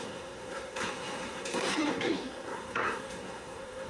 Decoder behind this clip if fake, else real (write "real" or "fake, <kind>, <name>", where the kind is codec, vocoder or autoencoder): fake, codec, SNAC